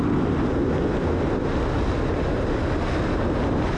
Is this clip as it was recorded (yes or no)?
yes